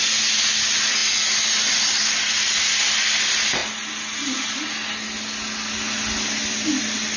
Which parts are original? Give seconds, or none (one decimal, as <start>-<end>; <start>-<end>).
0.0-7.2